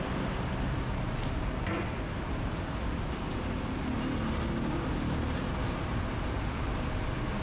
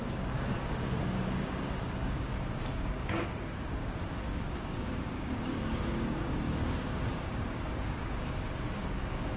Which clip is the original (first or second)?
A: first